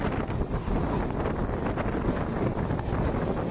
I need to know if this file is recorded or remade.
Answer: recorded